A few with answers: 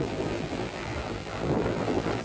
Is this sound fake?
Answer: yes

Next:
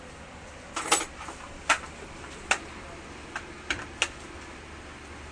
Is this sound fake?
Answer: no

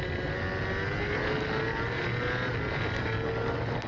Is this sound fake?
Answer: no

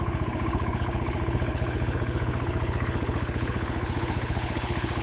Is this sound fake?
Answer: yes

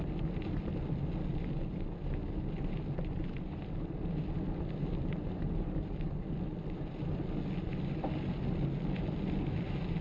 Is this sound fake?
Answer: no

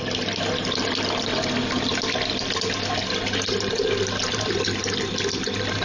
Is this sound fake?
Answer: no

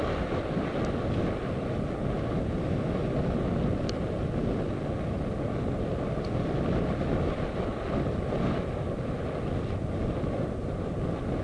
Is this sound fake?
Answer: no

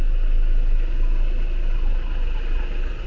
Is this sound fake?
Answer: no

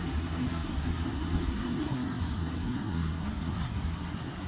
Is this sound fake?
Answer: yes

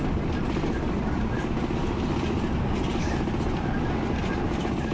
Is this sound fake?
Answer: no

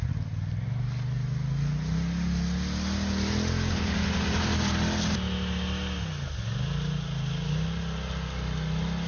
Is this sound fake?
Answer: no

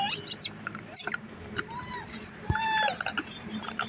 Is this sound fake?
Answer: yes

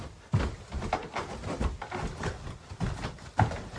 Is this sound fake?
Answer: no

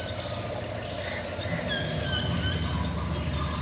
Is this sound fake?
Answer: no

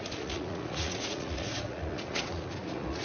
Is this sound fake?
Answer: yes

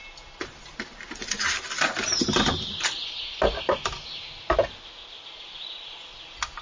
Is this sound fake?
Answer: no